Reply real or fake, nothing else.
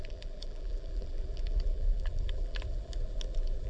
fake